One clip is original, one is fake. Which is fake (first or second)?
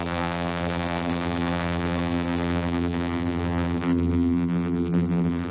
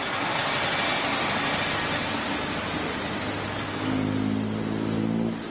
first